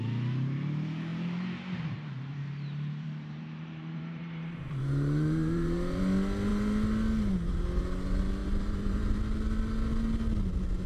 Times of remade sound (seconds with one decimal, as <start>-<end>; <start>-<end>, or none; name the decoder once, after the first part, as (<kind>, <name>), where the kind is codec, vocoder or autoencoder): 1.1-6.0 (vocoder, BigVGAN v2); 8.4-9.2